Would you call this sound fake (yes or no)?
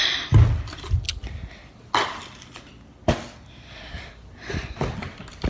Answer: no